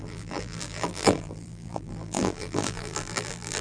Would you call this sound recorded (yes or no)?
no